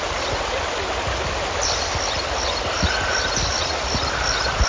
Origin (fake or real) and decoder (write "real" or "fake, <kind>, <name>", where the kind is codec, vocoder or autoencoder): real